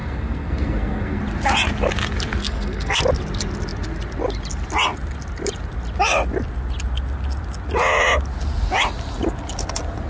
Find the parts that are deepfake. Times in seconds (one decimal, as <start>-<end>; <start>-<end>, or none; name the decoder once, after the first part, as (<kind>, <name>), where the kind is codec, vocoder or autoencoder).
0.0-1.2 (codec, SNAC); 2.4-3.0